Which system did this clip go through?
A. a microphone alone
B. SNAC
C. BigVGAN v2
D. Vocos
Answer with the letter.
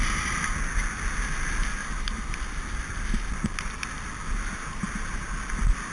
A